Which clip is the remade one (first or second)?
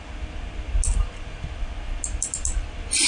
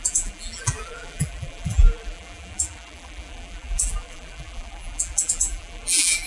second